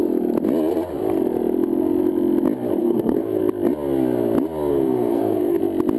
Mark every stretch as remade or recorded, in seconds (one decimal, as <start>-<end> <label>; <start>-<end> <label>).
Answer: 0.0-2.8 recorded; 2.8-3.4 remade; 3.4-4.7 recorded; 4.7-5.6 remade; 5.6-6.0 recorded